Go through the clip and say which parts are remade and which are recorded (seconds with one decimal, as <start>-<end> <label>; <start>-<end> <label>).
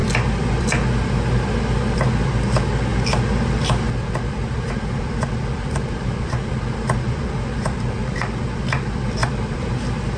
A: 0.0-9.2 recorded; 9.2-9.7 remade; 9.7-10.2 recorded